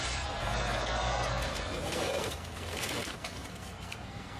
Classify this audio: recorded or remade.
remade